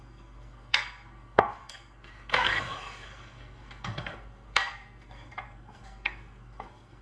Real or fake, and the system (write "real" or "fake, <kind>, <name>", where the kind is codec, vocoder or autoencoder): fake, codec, SNAC